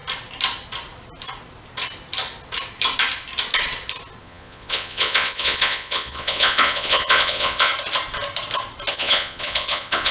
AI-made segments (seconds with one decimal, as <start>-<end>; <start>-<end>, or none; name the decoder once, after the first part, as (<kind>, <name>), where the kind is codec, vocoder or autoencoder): 4.2-7.7 (vocoder, Vocos); 8.9-10.1